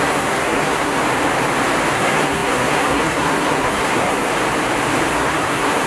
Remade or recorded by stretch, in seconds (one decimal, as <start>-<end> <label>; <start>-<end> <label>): 0.0-1.0 remade; 1.0-1.9 recorded; 1.9-4.3 remade; 4.3-5.1 recorded; 5.1-5.9 remade